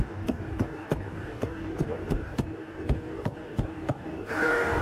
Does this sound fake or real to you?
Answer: fake